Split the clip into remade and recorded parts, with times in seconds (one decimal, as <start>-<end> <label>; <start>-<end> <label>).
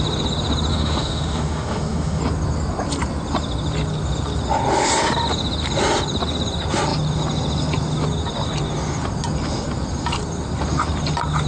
0.0-0.7 recorded; 0.7-2.2 remade; 2.2-11.5 recorded